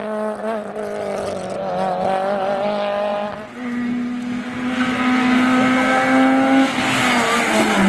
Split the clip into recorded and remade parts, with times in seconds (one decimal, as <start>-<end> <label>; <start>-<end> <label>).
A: 0.0-7.9 recorded